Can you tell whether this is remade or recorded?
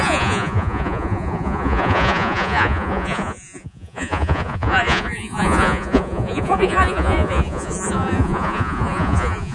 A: remade